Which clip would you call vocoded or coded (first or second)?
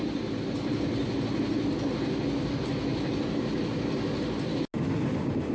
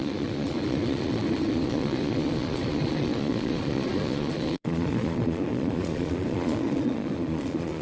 second